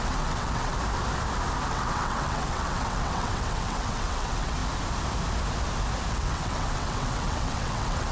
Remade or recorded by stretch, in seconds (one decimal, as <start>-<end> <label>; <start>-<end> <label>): 0.0-0.7 remade; 0.7-1.7 recorded; 1.7-4.6 remade; 4.6-6.1 recorded; 6.1-8.1 remade